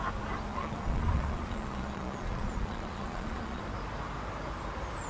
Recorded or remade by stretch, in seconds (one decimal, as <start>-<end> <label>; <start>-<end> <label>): 0.0-0.5 recorded; 0.5-3.6 remade; 3.6-5.1 recorded